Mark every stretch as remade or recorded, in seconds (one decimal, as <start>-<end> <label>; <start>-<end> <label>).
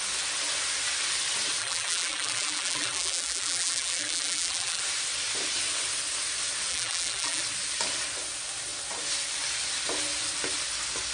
0.0-1.6 recorded; 1.6-4.8 remade; 4.8-6.7 recorded; 6.7-7.4 remade; 7.4-11.1 recorded